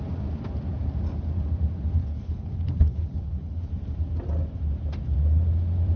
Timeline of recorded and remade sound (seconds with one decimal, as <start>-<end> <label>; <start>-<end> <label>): 0.0-2.0 recorded; 2.0-3.7 remade; 3.7-6.0 recorded

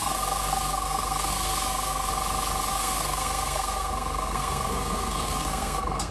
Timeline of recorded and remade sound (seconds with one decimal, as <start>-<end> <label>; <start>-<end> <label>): 0.0-2.1 remade; 2.1-2.7 recorded; 2.7-6.1 remade

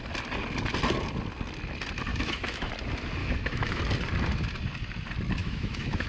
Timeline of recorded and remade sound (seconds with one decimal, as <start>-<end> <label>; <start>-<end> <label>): 0.0-2.1 recorded; 2.1-2.7 remade; 2.7-3.2 recorded; 3.2-3.8 remade; 3.8-5.4 recorded; 5.4-6.1 remade

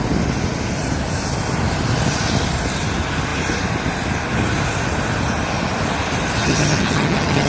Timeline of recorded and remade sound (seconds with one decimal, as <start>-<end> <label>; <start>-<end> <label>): 0.0-6.4 recorded; 6.4-7.5 remade

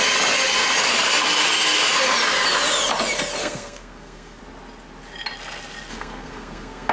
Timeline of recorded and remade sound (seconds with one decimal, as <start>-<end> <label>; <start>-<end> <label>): 0.0-3.4 recorded; 3.4-4.4 remade; 4.4-5.9 recorded; 5.9-6.9 remade

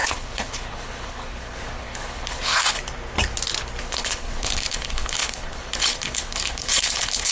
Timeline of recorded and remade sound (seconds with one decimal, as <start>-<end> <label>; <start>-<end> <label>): 0.0-2.8 remade; 2.8-3.8 recorded; 3.8-7.3 remade

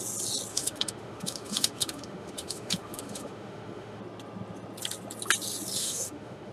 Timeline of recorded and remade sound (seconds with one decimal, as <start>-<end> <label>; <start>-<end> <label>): 0.0-0.5 recorded; 0.5-4.0 remade; 4.0-5.8 recorded; 5.8-6.5 remade